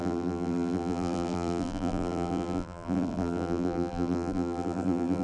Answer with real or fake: fake